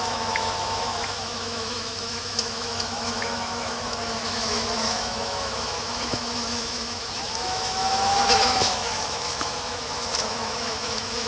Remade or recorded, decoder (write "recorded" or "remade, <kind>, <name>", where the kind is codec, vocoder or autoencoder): remade, autoencoder, DAC-VAE